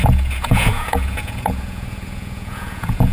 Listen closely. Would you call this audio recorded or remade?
remade